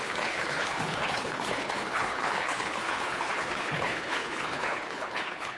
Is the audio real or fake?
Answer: fake